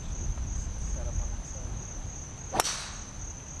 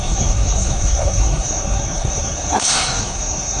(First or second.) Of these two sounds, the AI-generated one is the second